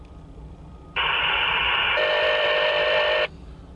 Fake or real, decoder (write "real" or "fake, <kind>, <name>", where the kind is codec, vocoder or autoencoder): fake, vocoder, BigVGAN v2